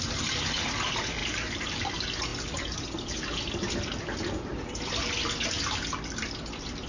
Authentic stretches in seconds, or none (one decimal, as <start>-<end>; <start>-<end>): 0.0-1.2; 1.9-6.9